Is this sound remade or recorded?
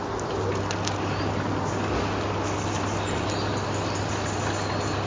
recorded